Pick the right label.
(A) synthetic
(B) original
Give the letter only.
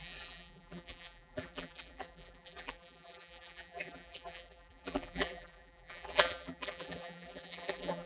A